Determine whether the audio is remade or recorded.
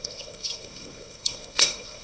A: remade